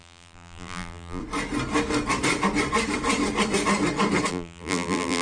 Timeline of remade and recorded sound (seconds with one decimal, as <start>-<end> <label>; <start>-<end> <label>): 0.0-1.2 remade; 1.2-4.3 recorded; 4.3-5.2 remade